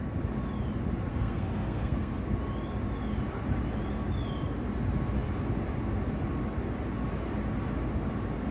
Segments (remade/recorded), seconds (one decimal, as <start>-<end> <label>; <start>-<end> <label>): 0.0-1.1 recorded; 1.1-2.2 remade; 2.2-8.5 recorded